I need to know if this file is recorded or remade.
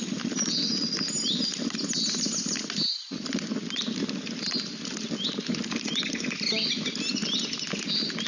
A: recorded